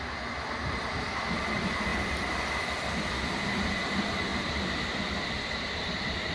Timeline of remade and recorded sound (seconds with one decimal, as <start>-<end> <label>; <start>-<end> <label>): 0.0-1.9 recorded; 1.9-2.5 remade; 2.5-4.3 recorded; 4.3-5.0 remade; 5.0-6.3 recorded